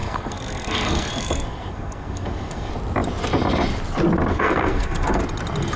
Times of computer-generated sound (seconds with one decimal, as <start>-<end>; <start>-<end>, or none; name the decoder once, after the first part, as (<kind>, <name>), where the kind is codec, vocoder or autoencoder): 0.0-2.7 (codec, SNAC); 4.3-5.2